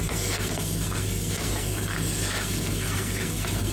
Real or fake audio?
fake